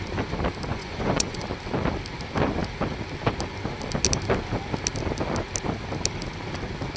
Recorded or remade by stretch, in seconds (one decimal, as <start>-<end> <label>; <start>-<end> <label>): 0.0-0.7 recorded; 0.7-1.4 remade; 1.4-7.0 recorded